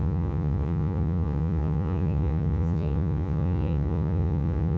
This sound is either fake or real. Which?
fake